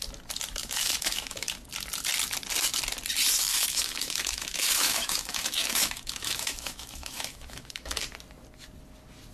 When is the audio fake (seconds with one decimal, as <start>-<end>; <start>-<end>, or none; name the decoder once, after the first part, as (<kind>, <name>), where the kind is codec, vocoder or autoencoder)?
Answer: 0.6-1.5 (autoencoder, DAC-VAE); 3.5-8.0